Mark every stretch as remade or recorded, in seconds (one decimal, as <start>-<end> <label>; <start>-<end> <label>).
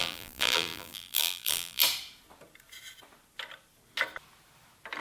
0.0-1.8 remade; 1.8-5.0 recorded